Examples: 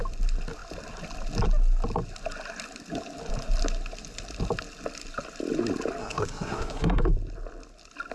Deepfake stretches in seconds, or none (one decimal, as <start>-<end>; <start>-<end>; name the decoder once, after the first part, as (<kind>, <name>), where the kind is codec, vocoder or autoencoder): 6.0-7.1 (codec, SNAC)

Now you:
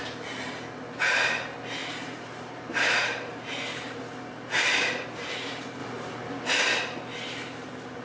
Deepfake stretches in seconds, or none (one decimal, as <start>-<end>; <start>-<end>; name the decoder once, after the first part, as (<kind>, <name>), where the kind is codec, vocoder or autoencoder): 1.8-4.0 (vocoder, BigVGAN v2)

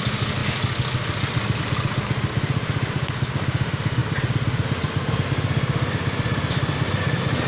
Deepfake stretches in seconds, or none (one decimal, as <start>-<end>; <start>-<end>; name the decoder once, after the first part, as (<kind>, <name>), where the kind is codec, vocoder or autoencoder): none

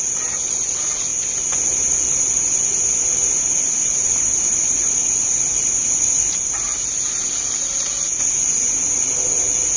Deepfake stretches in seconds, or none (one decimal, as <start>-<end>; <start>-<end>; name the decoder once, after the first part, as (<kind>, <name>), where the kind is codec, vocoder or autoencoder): none

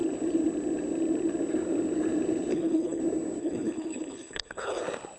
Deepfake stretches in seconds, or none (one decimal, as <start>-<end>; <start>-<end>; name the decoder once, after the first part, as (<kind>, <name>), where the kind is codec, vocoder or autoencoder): 2.5-3.0 (codec, HILCodec); 3.4-4.8

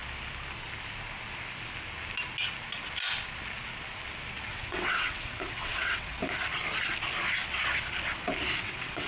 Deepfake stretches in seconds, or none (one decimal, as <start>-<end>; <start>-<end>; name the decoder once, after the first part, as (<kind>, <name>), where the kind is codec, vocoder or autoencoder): 4.5-6.2 (vocoder, WaveNeXt); 8.6-9.1